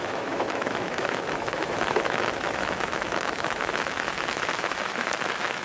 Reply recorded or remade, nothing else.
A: remade